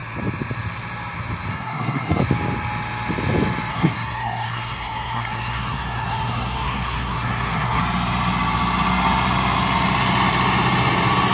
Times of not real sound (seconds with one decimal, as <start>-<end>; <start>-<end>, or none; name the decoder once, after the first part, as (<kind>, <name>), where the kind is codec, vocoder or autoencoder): 1.5-2.2 (codec, SNAC); 3.7-7.8